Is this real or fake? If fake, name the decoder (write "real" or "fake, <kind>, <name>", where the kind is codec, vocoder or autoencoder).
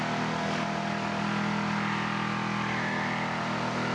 real